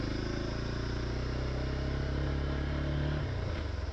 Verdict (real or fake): real